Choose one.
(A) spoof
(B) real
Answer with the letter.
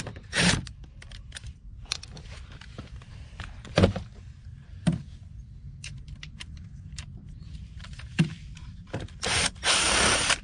A